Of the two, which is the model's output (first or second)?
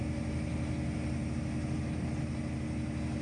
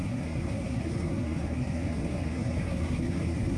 second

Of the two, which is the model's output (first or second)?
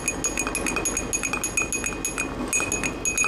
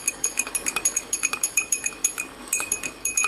second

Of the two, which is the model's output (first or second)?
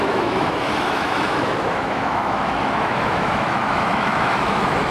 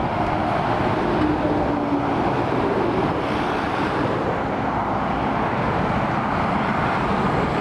first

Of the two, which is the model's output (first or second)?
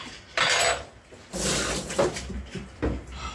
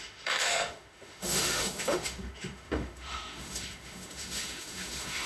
second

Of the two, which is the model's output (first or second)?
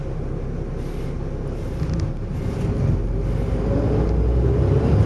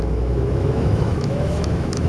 second